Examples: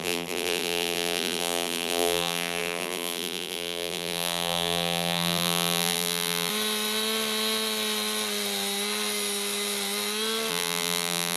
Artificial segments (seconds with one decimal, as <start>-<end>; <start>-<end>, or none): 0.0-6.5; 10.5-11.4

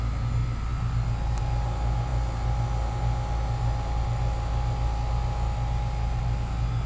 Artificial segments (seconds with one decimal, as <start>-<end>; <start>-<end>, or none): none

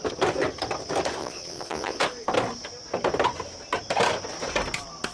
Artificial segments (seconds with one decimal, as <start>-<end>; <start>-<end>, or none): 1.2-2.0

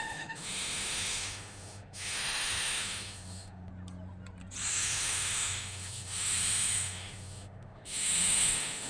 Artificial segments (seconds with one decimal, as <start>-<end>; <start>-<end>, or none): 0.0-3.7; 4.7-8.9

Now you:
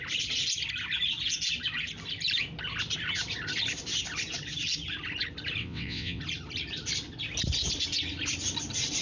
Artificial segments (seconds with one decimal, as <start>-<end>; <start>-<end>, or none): 5.6-6.2

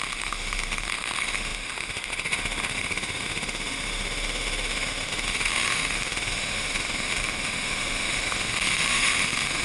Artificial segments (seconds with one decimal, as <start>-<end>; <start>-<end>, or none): 0.0-9.6

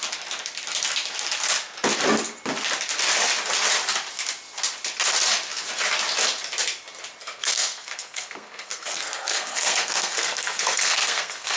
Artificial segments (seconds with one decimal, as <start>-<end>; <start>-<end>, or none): 7.2-11.6